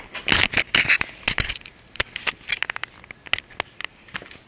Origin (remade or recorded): recorded